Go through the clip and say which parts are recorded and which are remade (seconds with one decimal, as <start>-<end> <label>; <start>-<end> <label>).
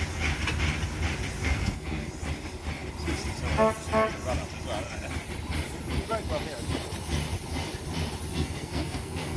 0.0-1.4 recorded; 1.4-2.1 remade; 2.1-8.3 recorded; 8.3-9.4 remade